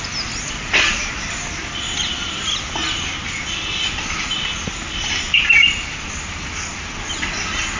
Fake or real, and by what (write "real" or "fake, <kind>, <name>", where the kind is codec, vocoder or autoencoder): real